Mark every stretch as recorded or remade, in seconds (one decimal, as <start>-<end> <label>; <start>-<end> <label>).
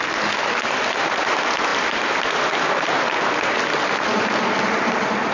0.0-5.3 recorded